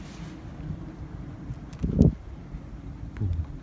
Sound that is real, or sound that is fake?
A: real